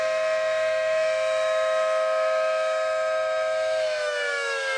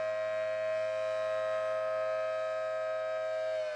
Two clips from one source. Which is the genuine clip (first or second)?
second